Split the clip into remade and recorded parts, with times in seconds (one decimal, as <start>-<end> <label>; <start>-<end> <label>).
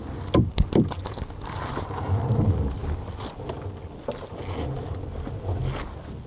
0.0-6.3 recorded